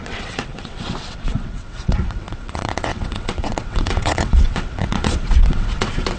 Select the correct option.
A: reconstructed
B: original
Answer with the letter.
A